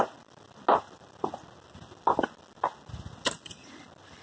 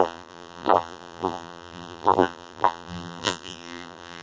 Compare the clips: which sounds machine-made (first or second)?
second